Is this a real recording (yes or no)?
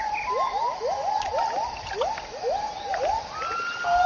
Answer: yes